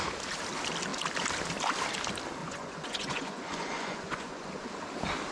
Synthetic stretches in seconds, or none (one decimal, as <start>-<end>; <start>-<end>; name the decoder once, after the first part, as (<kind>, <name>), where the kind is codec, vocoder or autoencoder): 2.4-4.5 (vocoder, Vocos)